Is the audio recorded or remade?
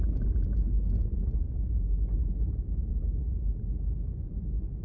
recorded